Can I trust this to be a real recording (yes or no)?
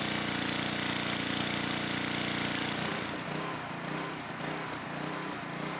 yes